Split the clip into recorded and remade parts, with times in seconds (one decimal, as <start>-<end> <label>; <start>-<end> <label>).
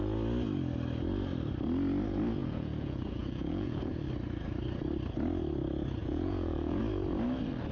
0.0-2.4 recorded; 2.4-3.9 remade; 3.9-6.0 recorded; 6.0-6.8 remade; 6.8-7.7 recorded